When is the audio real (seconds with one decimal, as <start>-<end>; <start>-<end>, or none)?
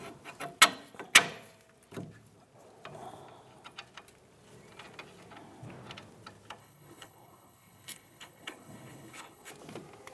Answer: 0.0-6.6; 9.5-10.1